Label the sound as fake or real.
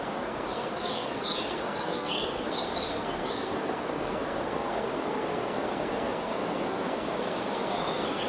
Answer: fake